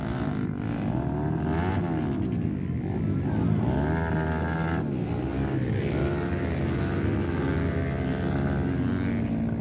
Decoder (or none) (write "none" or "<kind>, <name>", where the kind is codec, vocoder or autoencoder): none